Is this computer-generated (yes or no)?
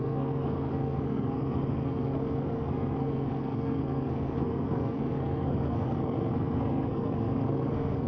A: yes